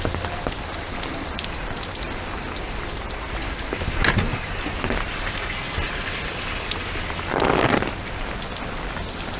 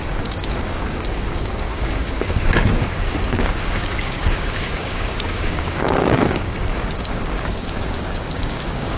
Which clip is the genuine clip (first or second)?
first